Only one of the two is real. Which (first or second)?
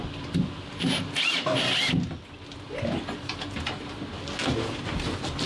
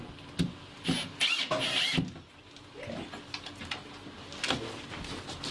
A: second